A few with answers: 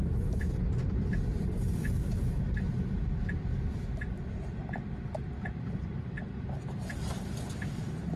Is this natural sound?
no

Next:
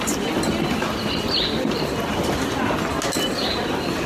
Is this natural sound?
yes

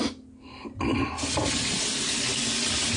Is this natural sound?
yes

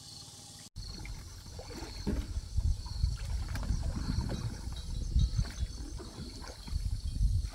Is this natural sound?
yes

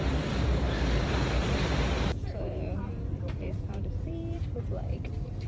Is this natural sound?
no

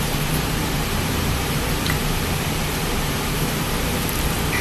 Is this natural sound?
no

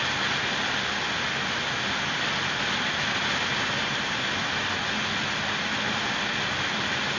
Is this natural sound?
yes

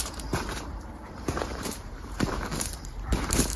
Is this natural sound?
no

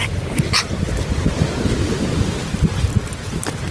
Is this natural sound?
yes